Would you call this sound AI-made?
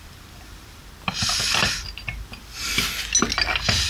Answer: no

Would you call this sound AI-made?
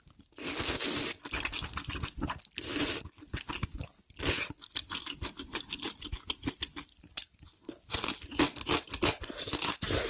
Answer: no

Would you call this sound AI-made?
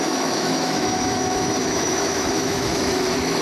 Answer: yes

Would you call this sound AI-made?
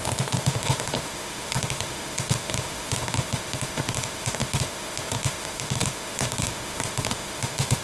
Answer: yes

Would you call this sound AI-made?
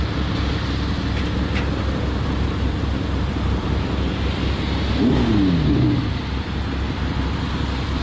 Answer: no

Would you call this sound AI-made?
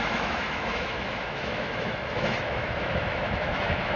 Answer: yes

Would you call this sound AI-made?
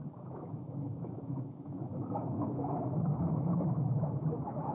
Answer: yes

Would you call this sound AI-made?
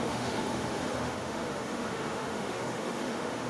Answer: yes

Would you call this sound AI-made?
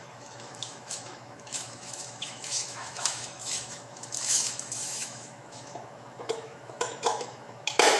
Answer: yes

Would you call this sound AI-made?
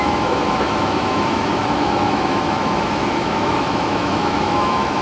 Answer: yes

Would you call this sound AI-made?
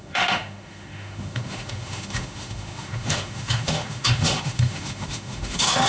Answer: yes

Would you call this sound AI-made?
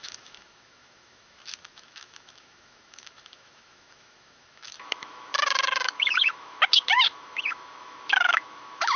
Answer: yes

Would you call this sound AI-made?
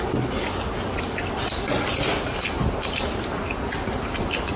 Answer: no